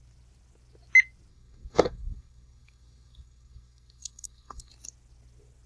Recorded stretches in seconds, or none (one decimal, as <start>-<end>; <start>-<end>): 0.0-1.3; 4.7-5.7